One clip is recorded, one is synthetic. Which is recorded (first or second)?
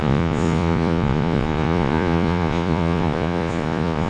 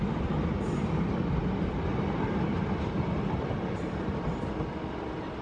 second